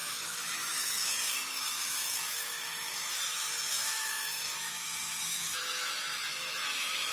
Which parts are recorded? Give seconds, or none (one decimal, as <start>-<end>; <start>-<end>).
none

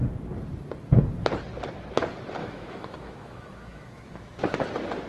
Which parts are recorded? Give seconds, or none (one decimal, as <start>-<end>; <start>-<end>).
0.0-2.4; 4.4-5.1

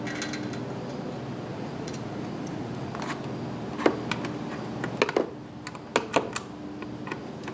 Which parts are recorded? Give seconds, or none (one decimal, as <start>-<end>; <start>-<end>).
0.0-1.5; 2.9-7.5

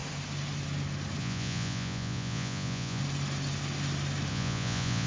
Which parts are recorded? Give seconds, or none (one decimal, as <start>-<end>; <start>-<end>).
0.0-1.2; 3.0-4.3

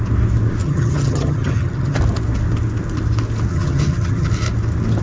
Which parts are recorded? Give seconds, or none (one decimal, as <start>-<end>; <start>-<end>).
0.0-0.6; 2.0-3.5; 4.3-5.0

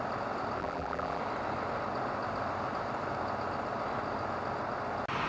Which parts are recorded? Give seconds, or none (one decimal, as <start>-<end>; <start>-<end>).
0.0-0.6; 1.2-5.3

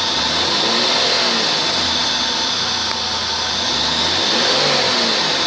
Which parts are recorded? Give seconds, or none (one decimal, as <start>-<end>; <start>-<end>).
0.0-5.5

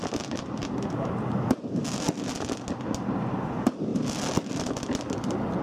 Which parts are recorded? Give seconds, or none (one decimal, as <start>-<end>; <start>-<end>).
0.0-5.6